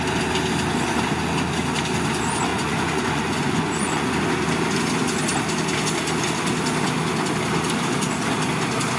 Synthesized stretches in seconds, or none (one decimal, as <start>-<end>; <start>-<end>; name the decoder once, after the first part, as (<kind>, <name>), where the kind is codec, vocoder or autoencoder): 2.5-4.1 (vocoder, Vocos)